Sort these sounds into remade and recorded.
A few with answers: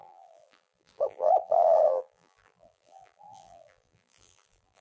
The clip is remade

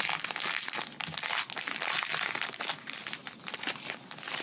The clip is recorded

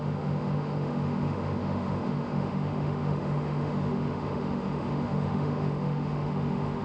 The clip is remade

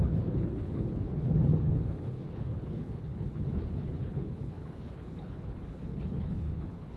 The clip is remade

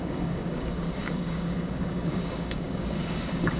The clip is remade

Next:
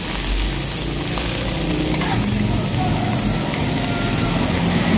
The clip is recorded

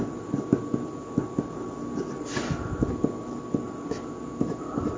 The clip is recorded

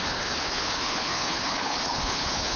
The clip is remade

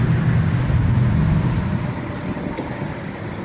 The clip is recorded